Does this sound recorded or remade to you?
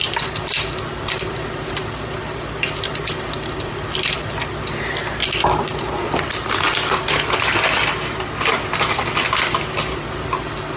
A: recorded